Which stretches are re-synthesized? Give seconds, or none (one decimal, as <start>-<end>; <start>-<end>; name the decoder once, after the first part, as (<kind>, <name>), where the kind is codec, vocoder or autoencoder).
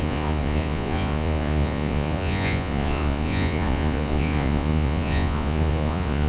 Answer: 0.0-6.3 (vocoder, Vocos)